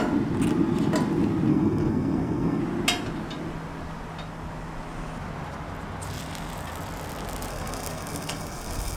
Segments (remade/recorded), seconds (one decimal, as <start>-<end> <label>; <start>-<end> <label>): 0.0-1.5 recorded; 1.5-2.6 remade; 2.6-7.5 recorded; 7.5-9.0 remade